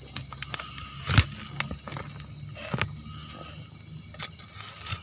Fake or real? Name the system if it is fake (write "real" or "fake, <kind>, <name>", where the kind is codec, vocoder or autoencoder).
real